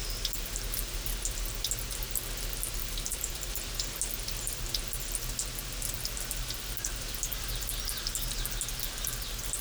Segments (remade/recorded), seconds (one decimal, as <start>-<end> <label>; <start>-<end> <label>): 0.0-2.8 recorded; 2.8-3.5 remade; 3.5-9.6 recorded